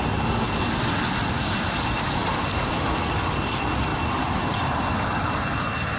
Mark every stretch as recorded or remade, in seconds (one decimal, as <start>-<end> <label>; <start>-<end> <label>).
0.0-3.9 recorded; 3.9-4.7 remade; 4.7-6.0 recorded